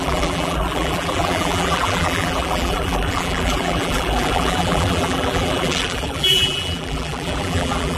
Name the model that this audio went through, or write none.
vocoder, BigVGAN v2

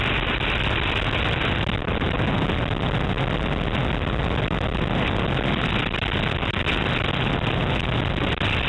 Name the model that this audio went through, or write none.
none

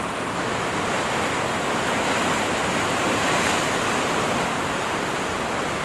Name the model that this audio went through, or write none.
vocoder, BigVGAN v2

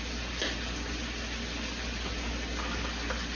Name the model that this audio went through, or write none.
none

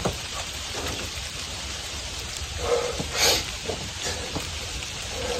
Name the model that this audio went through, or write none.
vocoder, BigVGAN v2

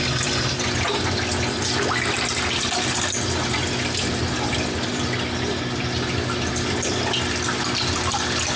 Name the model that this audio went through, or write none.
none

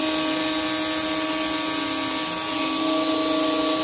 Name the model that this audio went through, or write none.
none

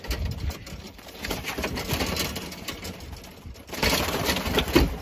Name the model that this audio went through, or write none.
none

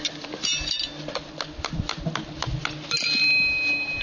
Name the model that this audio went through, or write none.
none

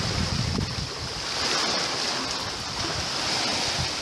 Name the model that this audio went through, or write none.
none